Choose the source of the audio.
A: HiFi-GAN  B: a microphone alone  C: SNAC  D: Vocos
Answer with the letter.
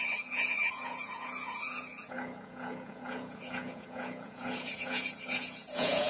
D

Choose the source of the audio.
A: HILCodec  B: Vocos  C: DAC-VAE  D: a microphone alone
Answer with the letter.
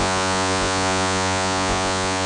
B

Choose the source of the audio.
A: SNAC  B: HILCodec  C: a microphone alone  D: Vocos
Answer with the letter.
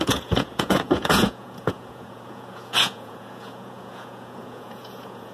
D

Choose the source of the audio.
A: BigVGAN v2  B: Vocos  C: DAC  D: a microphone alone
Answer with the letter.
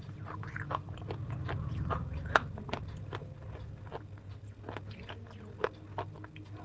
D